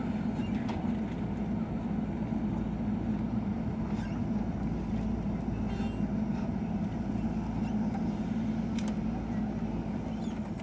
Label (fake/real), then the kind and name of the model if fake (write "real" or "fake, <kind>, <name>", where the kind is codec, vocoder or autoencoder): real